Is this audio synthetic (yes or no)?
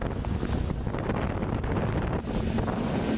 no